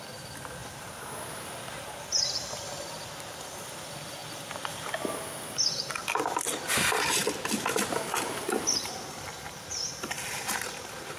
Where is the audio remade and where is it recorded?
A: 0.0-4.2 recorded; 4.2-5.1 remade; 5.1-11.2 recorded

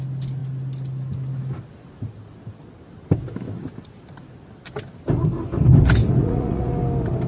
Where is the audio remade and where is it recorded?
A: 0.0-6.2 recorded; 6.2-6.7 remade; 6.7-7.3 recorded

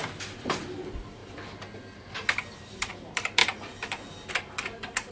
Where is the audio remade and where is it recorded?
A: 0.0-3.4 remade; 3.4-4.3 recorded; 4.3-5.1 remade

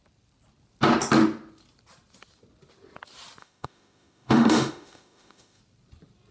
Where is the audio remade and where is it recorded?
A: 0.0-3.4 recorded; 3.4-5.6 remade; 5.6-6.3 recorded

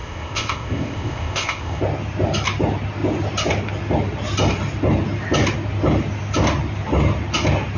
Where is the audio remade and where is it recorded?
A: 0.0-1.8 remade; 1.8-7.8 recorded